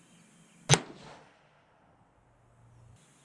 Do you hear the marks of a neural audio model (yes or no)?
no